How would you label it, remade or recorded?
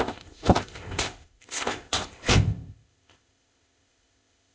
remade